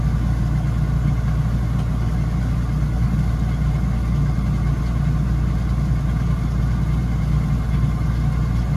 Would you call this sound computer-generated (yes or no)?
no